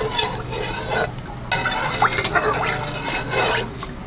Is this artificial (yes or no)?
no